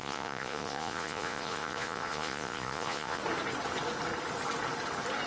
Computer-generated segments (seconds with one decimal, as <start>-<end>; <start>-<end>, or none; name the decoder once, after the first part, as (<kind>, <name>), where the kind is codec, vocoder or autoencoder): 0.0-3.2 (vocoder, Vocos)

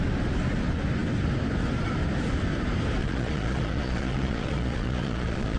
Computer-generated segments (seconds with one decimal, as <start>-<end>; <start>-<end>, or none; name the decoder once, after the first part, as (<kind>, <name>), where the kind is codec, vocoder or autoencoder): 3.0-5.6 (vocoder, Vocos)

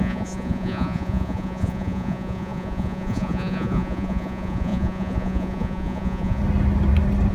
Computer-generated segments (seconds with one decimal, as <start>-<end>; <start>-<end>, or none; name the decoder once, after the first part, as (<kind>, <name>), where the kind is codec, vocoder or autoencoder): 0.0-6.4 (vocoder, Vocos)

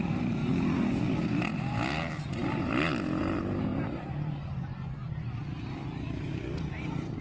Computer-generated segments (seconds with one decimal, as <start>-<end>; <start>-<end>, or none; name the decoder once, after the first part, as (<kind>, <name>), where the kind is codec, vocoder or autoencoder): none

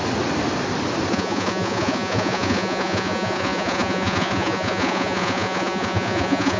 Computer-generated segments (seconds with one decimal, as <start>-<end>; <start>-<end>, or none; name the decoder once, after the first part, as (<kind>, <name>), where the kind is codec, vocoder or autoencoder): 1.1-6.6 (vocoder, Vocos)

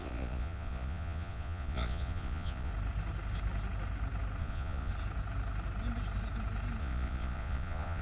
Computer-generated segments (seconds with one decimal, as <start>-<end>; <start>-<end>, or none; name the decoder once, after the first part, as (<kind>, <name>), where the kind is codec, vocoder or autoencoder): 0.0-2.7 (vocoder, Vocos); 4.4-4.9; 6.8-8.0

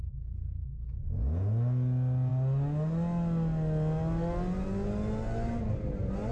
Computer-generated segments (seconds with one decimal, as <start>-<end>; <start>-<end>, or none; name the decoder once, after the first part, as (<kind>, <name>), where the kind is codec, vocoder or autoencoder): none